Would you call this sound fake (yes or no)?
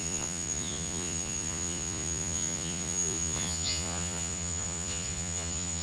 yes